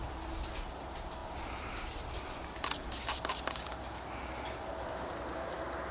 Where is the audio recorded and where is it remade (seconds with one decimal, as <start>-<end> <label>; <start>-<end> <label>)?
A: 0.0-5.9 recorded